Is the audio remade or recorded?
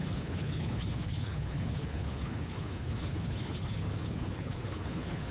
remade